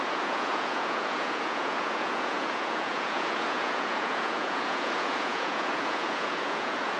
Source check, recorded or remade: remade